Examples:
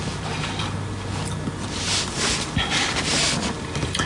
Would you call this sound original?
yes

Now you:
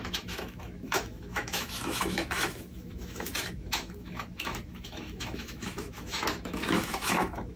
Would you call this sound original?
no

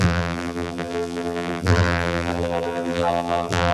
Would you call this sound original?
no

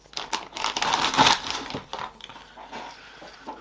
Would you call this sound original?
yes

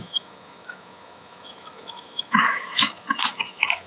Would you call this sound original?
no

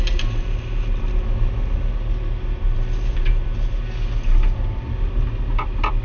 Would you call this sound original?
yes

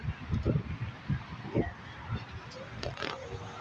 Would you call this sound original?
yes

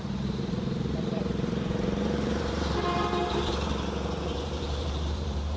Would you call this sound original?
no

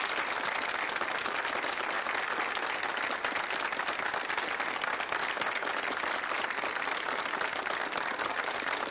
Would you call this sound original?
yes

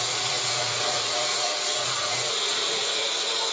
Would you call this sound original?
no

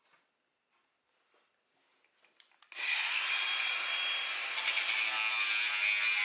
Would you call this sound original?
yes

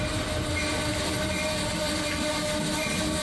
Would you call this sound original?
yes